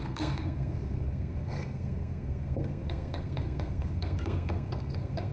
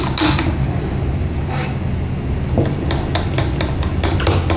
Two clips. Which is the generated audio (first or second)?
first